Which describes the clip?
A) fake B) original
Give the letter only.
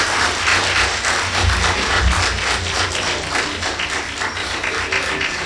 B